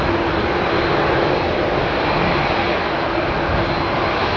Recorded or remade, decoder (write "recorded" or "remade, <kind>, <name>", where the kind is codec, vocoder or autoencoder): recorded